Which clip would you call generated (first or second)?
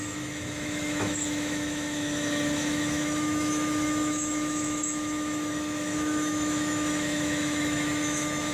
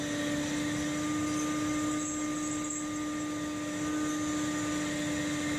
first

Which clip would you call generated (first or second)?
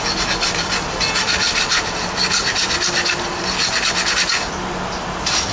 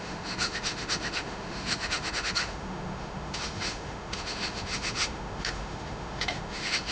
second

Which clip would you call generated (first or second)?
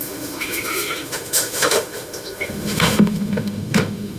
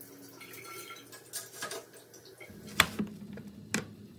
first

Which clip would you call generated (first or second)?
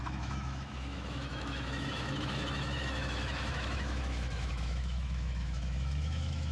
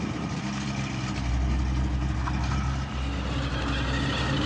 first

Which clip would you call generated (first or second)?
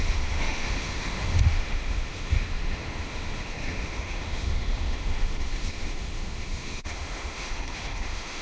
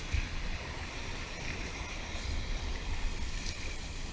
first